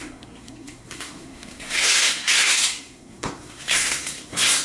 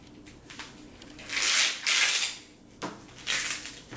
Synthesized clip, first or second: first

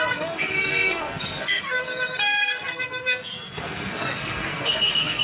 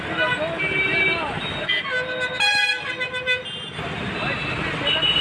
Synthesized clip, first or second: first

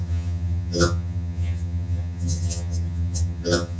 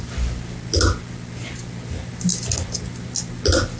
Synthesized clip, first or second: first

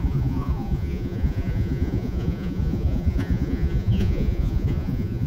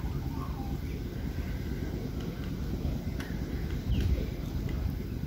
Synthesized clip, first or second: first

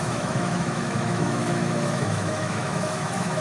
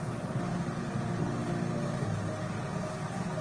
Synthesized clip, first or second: first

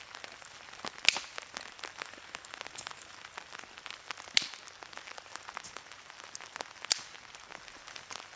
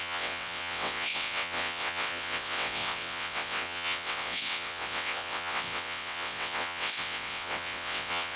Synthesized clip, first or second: second